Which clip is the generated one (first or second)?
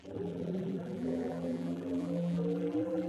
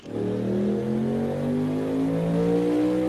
first